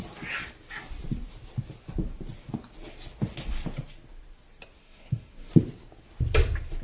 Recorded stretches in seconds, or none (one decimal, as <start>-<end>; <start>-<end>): 0.0-4.8; 5.5-6.8